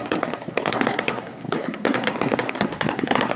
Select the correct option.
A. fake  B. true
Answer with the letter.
A